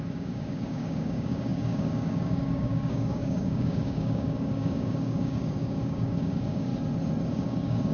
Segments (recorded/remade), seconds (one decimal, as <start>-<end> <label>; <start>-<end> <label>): 0.0-6.7 remade; 6.7-7.3 recorded; 7.3-7.9 remade